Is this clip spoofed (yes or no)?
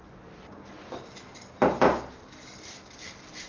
no